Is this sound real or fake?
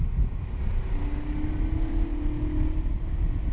real